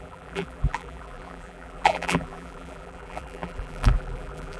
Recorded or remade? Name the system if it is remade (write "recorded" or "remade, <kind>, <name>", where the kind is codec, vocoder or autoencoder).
remade, vocoder, BigVGAN v2